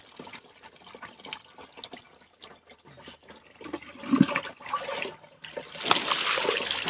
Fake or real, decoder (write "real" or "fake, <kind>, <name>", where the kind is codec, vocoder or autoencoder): real